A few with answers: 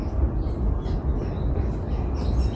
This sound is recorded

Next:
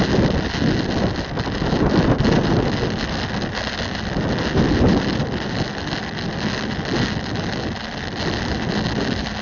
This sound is recorded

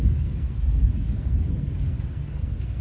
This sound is remade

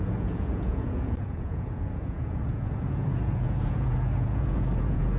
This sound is remade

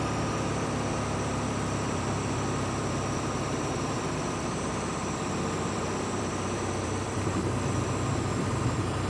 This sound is remade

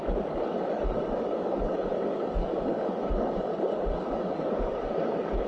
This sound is remade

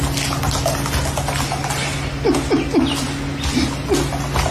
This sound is recorded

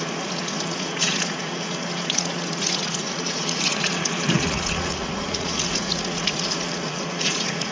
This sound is remade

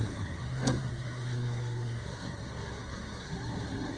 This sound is remade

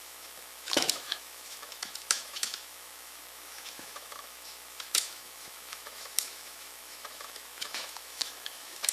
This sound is remade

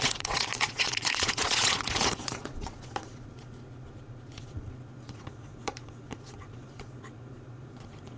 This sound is remade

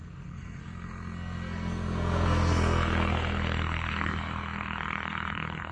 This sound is remade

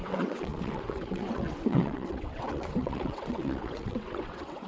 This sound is remade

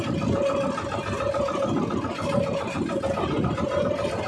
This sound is recorded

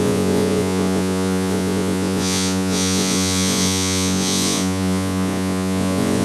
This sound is remade